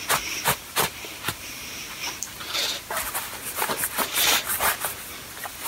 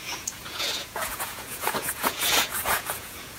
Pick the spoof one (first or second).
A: second